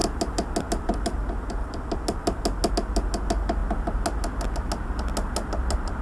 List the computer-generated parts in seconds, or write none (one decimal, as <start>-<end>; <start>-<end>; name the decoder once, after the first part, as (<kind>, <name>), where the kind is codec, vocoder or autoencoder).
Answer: none